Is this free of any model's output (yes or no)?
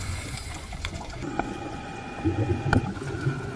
no